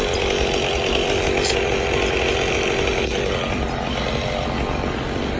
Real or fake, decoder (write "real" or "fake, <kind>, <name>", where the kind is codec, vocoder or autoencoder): real